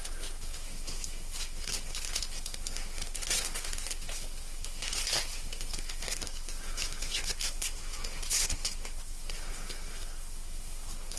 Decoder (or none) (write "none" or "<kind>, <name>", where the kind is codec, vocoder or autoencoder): codec, SNAC